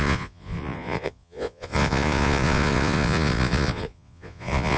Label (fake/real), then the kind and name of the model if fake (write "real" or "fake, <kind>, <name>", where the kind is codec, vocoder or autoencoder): fake, vocoder, Vocos